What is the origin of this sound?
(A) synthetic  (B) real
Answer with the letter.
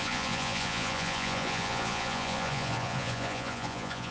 A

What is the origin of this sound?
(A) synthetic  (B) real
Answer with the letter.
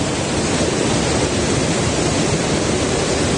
B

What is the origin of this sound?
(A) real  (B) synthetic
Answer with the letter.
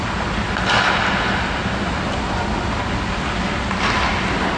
A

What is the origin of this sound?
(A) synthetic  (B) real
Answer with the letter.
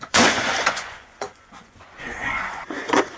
A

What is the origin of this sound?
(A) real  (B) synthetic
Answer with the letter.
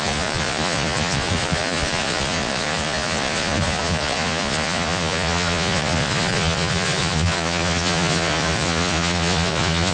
B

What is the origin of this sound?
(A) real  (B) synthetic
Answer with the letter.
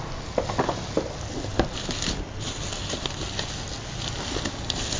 A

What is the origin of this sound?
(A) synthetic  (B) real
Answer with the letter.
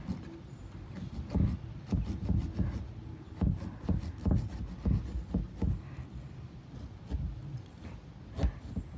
B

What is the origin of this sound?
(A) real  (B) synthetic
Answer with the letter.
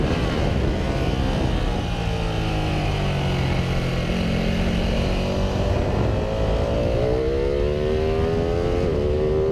A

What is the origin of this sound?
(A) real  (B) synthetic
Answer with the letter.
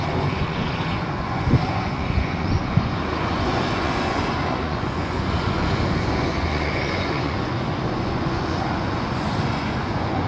B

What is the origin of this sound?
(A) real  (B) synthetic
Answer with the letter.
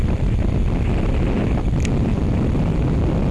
A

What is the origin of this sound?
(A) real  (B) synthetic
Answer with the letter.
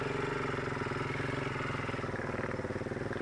A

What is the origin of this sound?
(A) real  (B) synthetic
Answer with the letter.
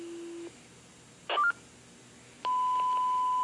A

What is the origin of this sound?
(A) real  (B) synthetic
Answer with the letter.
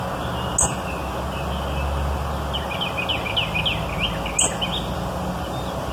A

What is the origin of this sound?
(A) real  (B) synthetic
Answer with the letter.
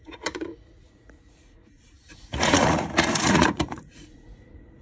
B